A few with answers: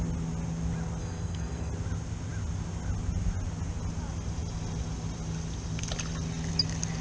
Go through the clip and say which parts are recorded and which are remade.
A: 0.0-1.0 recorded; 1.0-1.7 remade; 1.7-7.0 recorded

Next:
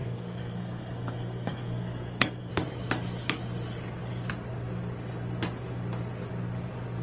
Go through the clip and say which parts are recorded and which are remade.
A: 0.0-2.5 remade; 2.5-7.0 recorded

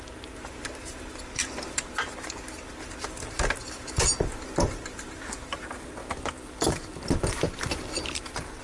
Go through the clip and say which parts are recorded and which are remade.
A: 0.0-6.0 remade; 6.0-6.7 recorded; 6.7-8.6 remade

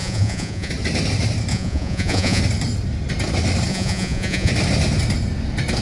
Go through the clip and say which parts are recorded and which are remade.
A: 0.0-0.7 remade; 0.7-1.5 recorded; 1.5-2.4 remade; 2.4-3.7 recorded; 3.7-4.5 remade; 4.5-5.8 recorded

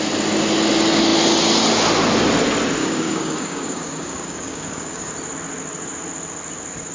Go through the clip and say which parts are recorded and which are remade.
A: 0.0-2.8 recorded; 2.8-5.1 remade; 5.1-6.9 recorded

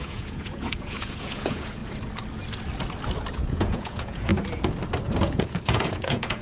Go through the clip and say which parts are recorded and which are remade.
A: 0.0-1.8 remade; 1.8-3.3 recorded; 3.3-4.3 remade; 4.3-5.2 recorded; 5.2-6.4 remade